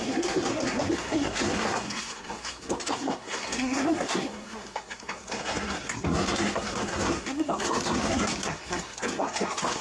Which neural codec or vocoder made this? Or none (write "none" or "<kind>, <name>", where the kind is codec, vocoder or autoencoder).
codec, SNAC